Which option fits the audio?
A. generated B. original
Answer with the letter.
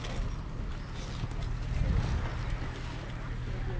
B